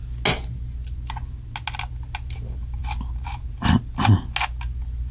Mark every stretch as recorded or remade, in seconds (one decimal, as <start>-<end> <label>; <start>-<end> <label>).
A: 0.0-5.1 recorded